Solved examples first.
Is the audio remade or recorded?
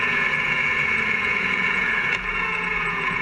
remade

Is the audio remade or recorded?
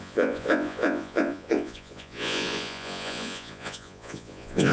remade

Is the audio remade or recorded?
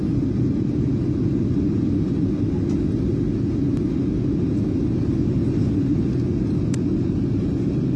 recorded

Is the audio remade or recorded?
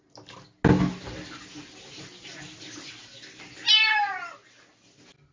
recorded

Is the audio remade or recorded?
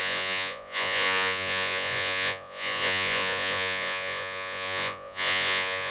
remade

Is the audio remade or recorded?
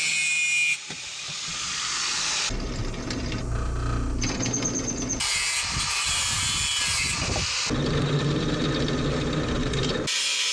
recorded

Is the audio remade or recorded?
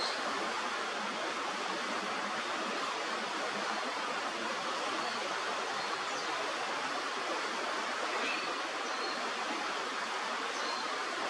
recorded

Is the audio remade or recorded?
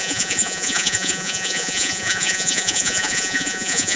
remade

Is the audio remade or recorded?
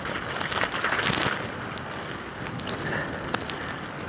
recorded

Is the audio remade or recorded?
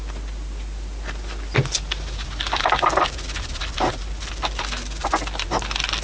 recorded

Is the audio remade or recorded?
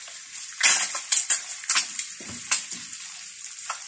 recorded